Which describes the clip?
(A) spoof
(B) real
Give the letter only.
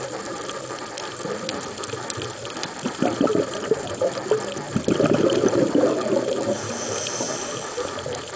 A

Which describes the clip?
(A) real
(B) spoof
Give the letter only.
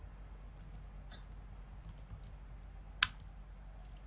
A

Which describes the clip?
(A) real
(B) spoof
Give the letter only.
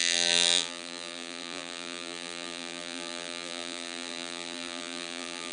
B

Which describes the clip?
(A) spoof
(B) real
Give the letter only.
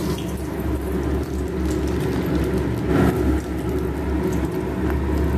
B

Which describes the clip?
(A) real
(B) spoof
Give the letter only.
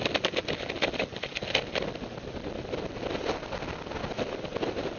A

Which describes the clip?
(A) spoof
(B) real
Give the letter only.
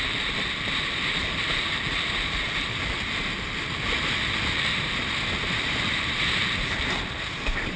A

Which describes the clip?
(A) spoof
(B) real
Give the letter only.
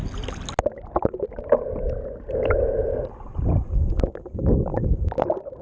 B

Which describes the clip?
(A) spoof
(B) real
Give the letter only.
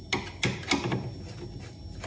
B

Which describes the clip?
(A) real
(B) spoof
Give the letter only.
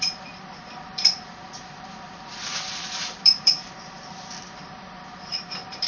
B